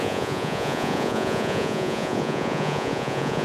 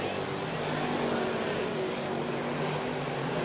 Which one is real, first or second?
second